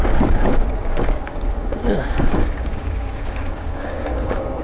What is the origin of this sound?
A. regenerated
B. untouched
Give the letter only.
A